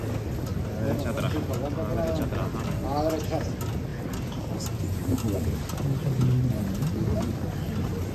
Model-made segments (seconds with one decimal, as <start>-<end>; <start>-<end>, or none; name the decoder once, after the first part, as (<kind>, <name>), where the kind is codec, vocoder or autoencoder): none